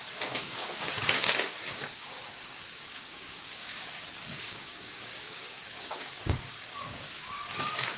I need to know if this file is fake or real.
fake